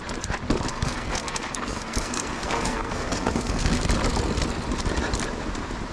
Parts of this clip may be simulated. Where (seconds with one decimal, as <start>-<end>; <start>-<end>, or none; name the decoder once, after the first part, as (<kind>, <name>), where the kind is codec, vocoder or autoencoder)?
0.7-3.8 (codec, SNAC)